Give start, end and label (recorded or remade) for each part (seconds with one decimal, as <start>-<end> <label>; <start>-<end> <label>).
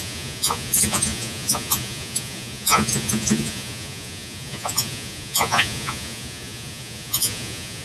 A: 0.0-7.8 remade